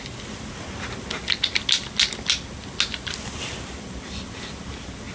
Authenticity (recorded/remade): recorded